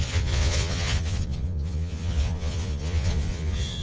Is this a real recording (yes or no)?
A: no